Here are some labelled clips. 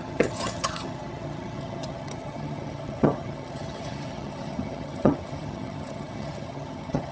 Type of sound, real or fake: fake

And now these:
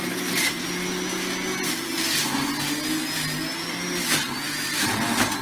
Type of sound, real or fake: real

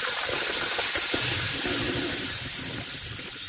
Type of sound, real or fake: real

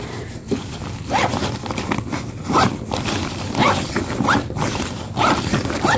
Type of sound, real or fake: real